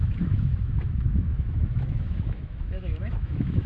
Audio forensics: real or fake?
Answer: fake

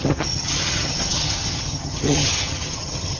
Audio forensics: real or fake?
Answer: fake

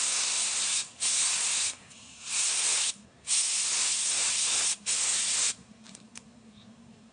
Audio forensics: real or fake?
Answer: fake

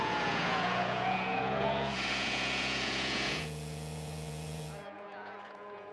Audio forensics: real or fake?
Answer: fake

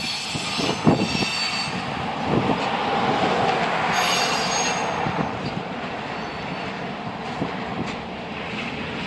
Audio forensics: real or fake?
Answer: real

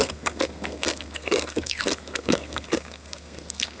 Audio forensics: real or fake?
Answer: fake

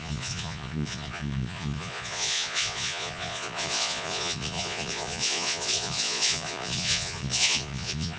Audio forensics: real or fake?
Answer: fake